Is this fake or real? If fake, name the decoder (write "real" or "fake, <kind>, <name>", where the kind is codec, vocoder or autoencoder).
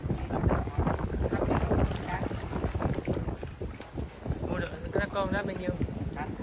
real